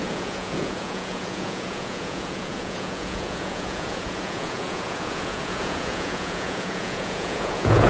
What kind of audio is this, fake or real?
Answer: fake